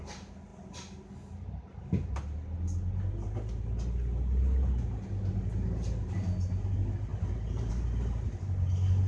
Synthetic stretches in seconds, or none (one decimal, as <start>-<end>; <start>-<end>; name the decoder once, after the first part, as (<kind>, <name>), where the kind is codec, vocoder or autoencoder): none

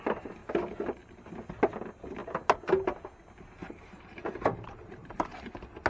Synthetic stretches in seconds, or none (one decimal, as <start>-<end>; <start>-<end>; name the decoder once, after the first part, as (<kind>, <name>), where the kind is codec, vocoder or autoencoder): 3.6-5.5 (vocoder, BigVGAN v2)